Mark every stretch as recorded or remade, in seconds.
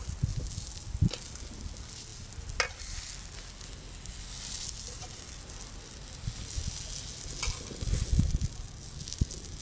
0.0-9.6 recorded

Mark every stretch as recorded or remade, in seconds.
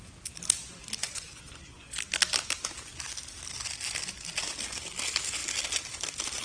0.0-1.0 recorded; 1.0-2.0 remade; 2.0-6.4 recorded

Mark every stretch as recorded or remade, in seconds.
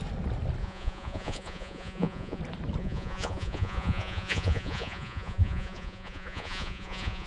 0.0-0.6 recorded; 0.6-2.4 remade; 2.4-2.8 recorded; 2.8-7.3 remade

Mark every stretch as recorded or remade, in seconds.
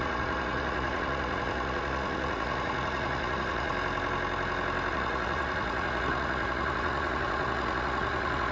0.0-3.7 remade; 3.7-4.9 recorded; 4.9-8.5 remade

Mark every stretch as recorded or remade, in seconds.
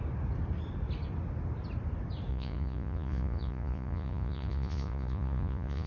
0.0-2.3 recorded; 2.3-5.9 remade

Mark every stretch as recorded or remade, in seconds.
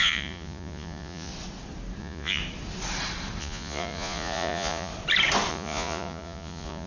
0.0-1.3 remade; 1.3-2.0 recorded; 2.0-2.4 remade; 2.4-3.4 recorded; 3.4-4.9 remade; 4.9-5.5 recorded; 5.5-6.9 remade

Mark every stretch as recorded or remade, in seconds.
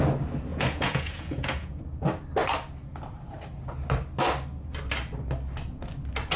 0.0-0.5 recorded; 0.5-1.8 remade; 1.8-6.4 recorded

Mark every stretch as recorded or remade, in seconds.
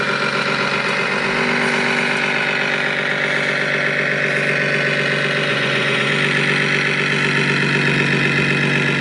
0.0-5.5 recorded; 5.5-6.1 remade; 6.1-9.0 recorded